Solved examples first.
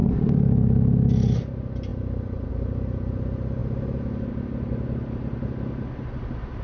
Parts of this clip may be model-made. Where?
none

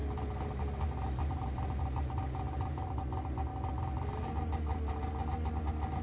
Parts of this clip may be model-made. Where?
0.0-3.0